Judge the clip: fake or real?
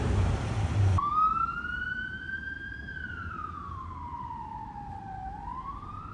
fake